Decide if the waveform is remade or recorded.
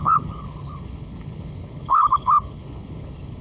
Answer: remade